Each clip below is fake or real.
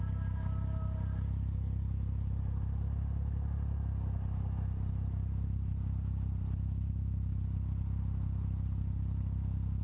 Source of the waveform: real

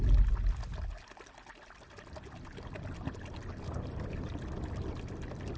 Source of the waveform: real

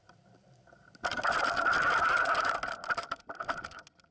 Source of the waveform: real